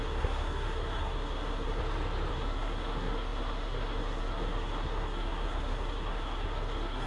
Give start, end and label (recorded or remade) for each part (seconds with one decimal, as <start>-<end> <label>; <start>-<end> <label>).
0.0-1.8 remade; 1.8-2.3 recorded; 2.3-7.1 remade